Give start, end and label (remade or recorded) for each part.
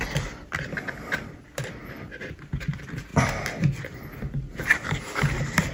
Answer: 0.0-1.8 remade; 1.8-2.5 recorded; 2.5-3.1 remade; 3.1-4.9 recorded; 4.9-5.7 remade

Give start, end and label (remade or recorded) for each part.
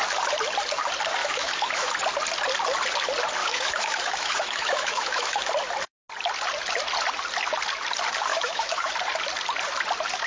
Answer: 0.0-1.2 recorded; 1.2-1.9 remade; 1.9-3.4 recorded; 3.4-5.5 remade; 5.5-8.3 recorded; 8.3-8.9 remade; 8.9-10.3 recorded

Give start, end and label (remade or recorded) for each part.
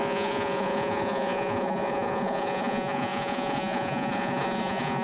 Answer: 0.0-5.0 remade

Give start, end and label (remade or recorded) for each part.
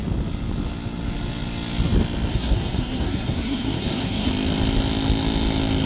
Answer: 0.0-2.3 recorded; 2.3-4.3 remade; 4.3-5.9 recorded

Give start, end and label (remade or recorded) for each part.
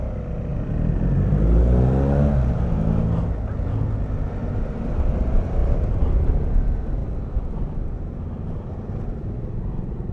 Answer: 0.0-0.5 recorded; 0.5-1.6 remade; 1.6-4.4 recorded; 4.4-5.1 remade; 5.1-5.6 recorded; 5.6-6.3 remade; 6.3-7.0 recorded; 7.0-8.9 remade; 8.9-10.1 recorded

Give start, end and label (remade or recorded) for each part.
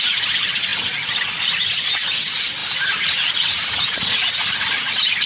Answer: 0.0-5.3 recorded